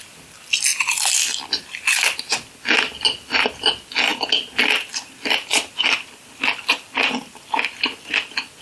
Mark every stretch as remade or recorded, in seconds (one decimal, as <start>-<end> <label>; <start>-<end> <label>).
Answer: 0.0-8.6 recorded